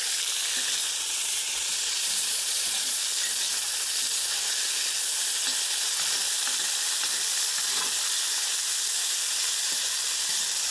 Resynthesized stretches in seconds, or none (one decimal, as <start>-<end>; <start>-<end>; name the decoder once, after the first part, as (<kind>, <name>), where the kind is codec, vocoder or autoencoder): 0.8-3.0 (vocoder, Vocos)

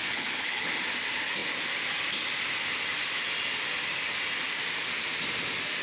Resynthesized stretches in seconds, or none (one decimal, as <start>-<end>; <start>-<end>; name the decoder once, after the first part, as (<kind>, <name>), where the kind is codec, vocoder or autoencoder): 0.0-0.7 (codec, HILCodec)

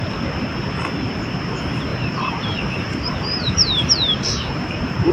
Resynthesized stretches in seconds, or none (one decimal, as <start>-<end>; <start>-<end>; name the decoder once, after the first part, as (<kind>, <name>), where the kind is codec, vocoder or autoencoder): 1.9-5.1 (vocoder, BigVGAN v2)

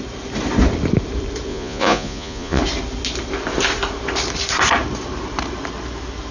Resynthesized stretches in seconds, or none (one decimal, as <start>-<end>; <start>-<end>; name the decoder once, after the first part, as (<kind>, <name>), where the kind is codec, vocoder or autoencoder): 1.5-2.6 (vocoder, Vocos)

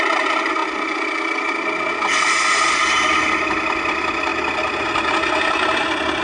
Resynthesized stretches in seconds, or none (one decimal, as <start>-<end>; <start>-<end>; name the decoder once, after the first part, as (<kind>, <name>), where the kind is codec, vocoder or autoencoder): none

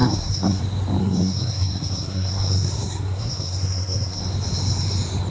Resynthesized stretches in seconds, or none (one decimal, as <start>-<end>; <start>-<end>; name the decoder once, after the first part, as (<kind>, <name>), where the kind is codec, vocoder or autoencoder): 0.0-0.6 (codec, SNAC); 1.0-4.2

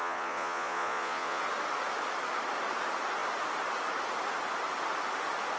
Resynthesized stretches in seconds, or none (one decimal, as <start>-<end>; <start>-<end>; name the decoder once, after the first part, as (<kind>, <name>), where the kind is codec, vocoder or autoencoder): 0.0-1.4 (vocoder, Vocos)

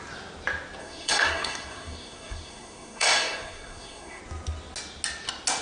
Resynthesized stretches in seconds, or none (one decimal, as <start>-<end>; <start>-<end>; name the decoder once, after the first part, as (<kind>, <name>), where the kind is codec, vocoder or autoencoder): 0.8-4.2 (codec, SNAC)